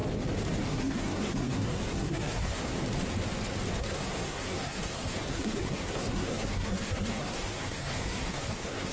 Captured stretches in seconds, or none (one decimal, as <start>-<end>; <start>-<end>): 0.0-0.7; 2.6-3.8